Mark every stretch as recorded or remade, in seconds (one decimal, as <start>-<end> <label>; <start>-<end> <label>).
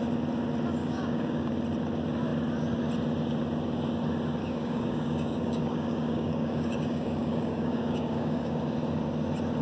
0.0-0.8 recorded; 0.8-1.5 remade; 1.5-4.4 recorded; 4.4-8.6 remade; 8.6-9.6 recorded